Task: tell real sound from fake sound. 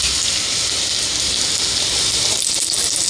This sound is real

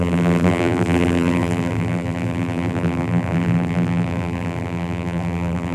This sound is fake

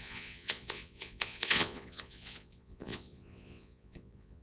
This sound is fake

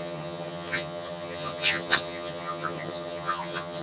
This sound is fake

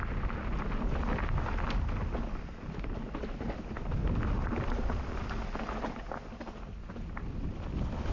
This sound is real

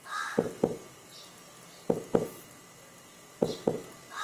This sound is real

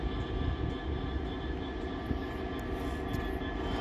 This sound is real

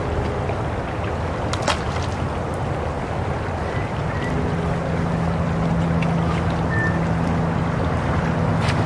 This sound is real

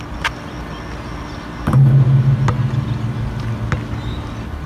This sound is real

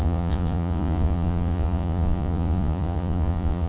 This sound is fake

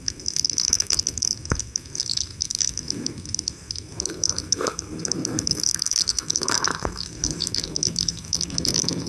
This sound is fake